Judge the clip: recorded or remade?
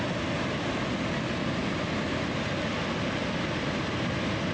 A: recorded